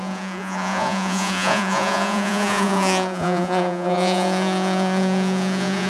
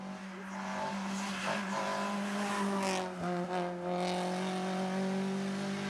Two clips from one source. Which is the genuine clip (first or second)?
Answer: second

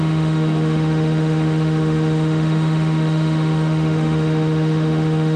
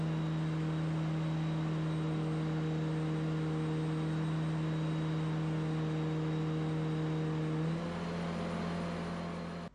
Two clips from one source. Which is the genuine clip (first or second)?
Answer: second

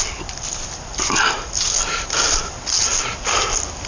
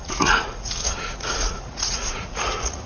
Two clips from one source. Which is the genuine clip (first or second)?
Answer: first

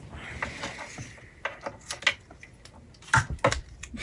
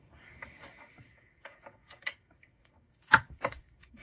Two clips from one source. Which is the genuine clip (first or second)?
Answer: first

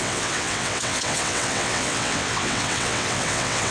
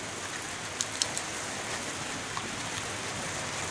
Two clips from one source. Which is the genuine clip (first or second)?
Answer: second